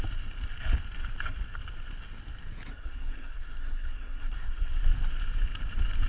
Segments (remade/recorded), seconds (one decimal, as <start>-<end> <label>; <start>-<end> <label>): 0.0-2.7 recorded; 2.7-4.8 remade; 4.8-6.1 recorded